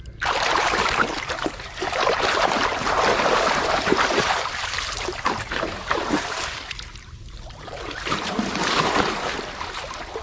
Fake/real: fake